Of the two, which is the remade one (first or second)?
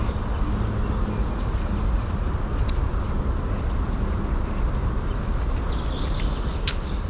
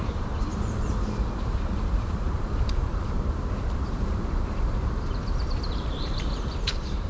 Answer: second